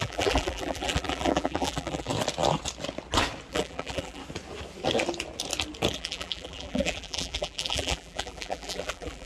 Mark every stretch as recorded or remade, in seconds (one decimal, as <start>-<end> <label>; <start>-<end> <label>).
0.0-2.1 remade; 2.1-3.5 recorded; 3.5-4.2 remade; 4.2-5.9 recorded; 5.9-9.3 remade